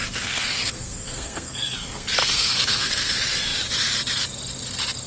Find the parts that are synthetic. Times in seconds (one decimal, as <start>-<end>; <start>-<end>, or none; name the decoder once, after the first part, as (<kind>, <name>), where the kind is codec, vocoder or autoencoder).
0.0-3.1 (codec, SNAC)